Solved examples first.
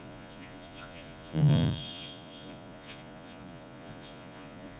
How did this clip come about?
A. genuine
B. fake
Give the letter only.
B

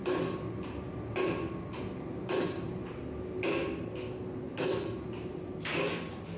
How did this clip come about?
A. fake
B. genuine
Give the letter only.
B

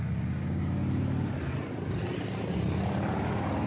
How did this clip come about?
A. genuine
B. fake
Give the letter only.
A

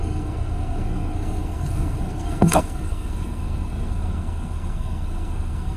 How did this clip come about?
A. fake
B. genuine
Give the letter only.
A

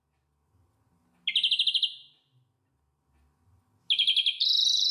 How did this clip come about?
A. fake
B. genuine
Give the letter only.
B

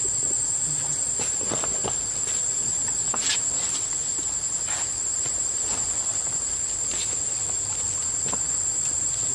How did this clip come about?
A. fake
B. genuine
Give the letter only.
B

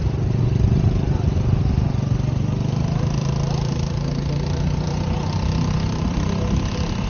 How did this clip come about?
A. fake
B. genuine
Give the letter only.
A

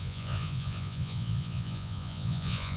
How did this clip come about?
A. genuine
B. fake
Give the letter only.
B